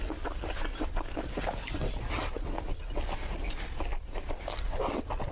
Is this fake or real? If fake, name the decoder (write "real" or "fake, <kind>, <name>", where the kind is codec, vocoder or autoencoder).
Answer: real